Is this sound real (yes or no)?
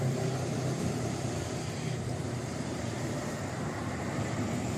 no